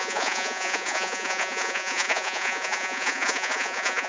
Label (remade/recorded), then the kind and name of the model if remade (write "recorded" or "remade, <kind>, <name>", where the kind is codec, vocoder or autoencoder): remade, vocoder, Vocos